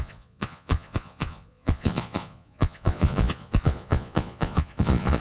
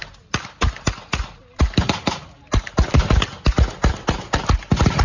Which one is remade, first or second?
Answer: first